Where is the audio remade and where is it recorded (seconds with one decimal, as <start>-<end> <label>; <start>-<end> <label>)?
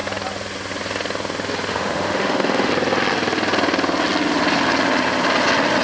0.0-1.7 recorded; 1.7-2.7 remade; 2.7-5.8 recorded